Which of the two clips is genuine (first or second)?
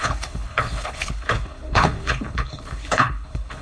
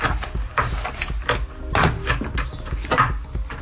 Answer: second